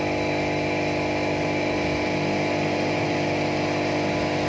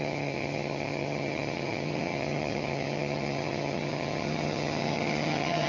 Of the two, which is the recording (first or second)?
first